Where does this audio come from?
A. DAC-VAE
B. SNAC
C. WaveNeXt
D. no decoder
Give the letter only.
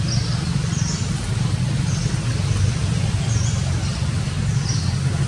D